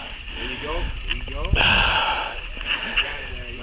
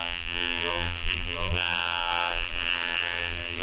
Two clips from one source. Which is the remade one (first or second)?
second